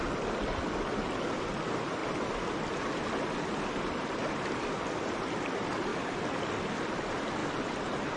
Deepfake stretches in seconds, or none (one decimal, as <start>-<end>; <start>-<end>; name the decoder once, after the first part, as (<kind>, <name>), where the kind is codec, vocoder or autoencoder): none